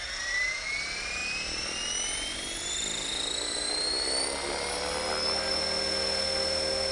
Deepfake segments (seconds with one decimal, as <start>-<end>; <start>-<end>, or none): none